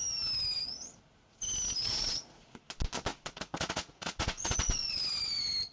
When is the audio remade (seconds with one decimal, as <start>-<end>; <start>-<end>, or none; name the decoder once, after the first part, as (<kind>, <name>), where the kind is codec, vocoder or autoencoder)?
1.8-2.5 (vocoder, Vocos); 3.1-5.0